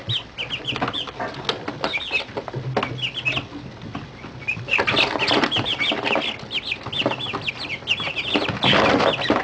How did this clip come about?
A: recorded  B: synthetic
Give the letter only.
A